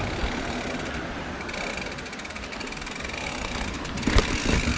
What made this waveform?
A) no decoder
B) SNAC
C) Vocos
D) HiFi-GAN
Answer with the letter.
A